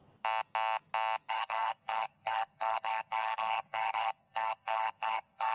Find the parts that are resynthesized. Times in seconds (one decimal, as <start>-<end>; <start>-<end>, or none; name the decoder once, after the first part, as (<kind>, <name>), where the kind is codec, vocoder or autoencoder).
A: 1.3-5.5 (codec, SNAC)